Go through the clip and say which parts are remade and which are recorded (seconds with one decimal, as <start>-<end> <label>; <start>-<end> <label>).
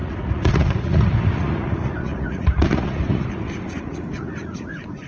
0.0-5.1 remade